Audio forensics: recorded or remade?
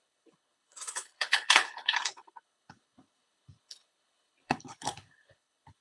remade